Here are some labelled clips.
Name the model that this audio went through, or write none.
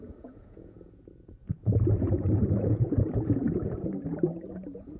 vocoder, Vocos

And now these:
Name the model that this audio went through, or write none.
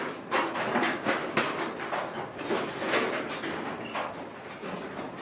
none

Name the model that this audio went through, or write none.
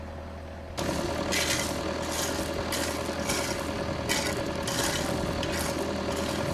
none